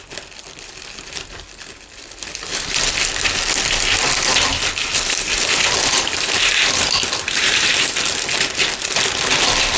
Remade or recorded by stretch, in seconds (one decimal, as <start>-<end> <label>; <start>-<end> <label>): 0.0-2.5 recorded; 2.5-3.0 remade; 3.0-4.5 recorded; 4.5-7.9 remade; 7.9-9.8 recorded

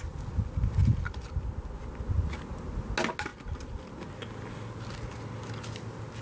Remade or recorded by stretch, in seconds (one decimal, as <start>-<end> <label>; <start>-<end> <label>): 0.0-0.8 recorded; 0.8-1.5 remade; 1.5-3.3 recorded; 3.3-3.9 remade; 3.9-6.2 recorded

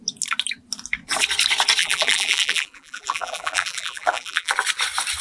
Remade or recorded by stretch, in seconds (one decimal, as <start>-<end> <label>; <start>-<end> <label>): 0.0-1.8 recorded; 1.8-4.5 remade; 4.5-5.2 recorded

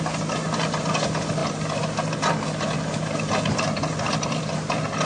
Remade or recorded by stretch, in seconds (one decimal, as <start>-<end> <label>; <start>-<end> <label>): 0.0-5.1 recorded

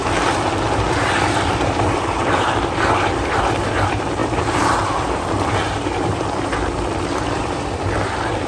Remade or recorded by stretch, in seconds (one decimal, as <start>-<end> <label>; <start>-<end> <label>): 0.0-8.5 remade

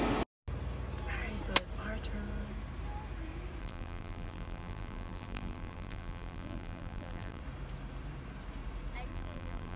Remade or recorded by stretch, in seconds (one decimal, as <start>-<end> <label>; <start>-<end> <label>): 0.0-3.6 recorded; 3.6-7.4 remade; 7.4-9.1 recorded; 9.1-9.8 remade

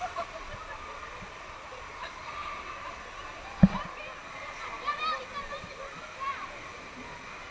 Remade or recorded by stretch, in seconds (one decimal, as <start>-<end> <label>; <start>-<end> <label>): 0.0-7.5 recorded